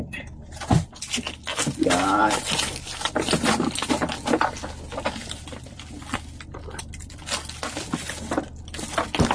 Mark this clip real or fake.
real